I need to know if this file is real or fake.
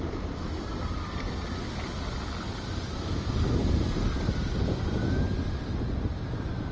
real